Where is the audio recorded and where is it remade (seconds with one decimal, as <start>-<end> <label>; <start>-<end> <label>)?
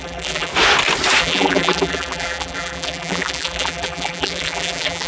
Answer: 0.0-0.5 remade; 0.5-1.2 recorded; 1.2-5.1 remade